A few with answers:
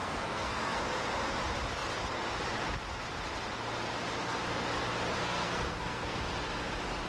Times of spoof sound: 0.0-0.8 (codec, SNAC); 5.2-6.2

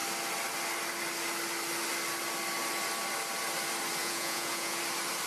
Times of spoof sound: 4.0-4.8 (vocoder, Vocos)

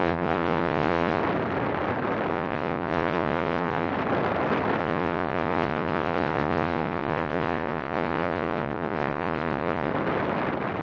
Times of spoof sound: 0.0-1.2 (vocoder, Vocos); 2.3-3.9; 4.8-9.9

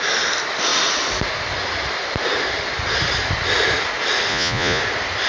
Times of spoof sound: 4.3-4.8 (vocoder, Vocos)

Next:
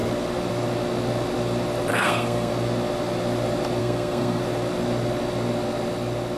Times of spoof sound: 1.9-2.5 (codec, SNAC); 3.8-4.4